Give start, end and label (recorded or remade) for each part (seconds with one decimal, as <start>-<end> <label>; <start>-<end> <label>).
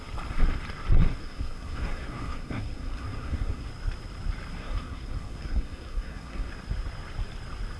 0.0-1.2 recorded; 1.2-3.7 remade; 3.7-4.6 recorded; 4.6-6.5 remade; 6.5-7.8 recorded